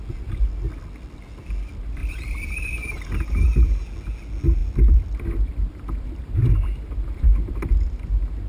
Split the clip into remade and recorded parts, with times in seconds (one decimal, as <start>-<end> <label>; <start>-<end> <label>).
0.0-2.0 recorded; 2.0-3.7 remade; 3.7-4.6 recorded; 4.6-7.7 remade; 7.7-8.5 recorded